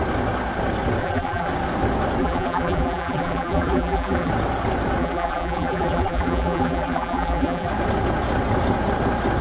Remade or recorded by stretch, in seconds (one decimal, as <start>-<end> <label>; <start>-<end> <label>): 0.0-1.0 recorded; 1.0-1.5 remade; 1.5-2.2 recorded; 2.2-4.3 remade; 4.3-5.0 recorded; 5.0-7.7 remade; 7.7-9.4 recorded